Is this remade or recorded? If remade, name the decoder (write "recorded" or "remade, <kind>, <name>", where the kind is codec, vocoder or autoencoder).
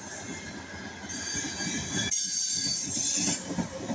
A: recorded